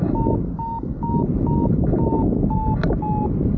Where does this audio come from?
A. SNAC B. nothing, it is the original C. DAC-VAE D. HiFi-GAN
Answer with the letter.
B